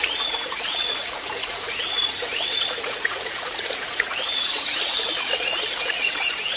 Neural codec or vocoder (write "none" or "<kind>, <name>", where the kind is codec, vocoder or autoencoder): vocoder, Vocos